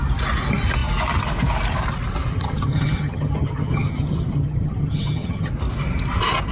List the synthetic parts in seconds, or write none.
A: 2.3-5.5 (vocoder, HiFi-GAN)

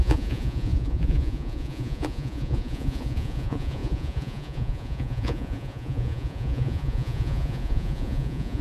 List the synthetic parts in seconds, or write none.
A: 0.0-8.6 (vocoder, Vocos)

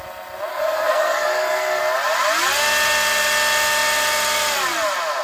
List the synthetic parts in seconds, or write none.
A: 0.5-1.8 (codec, SNAC)

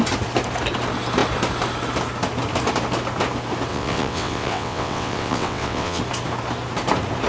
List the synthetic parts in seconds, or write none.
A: 3.7-6.0 (vocoder, WaveNeXt)